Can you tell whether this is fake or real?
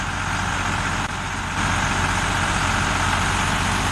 real